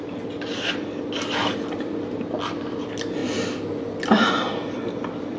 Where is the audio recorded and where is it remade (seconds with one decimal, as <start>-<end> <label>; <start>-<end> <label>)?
0.0-5.4 recorded